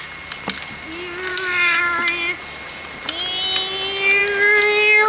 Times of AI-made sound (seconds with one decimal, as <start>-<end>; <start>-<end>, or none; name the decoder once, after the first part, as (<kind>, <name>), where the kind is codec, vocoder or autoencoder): 1.3-1.8 (autoencoder, DAC-VAE)